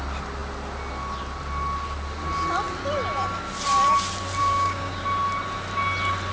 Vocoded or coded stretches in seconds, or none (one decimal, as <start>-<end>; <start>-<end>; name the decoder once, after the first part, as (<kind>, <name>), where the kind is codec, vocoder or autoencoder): 4.4-5.0 (codec, DAC)

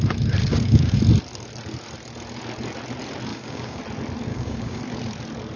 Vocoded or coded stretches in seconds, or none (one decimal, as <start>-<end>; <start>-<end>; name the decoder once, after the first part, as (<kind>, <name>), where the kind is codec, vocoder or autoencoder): 0.4-1.0 (codec, DAC); 3.3-3.8; 4.3-4.8